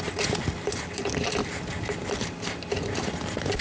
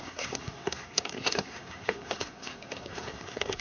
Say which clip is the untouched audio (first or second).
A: first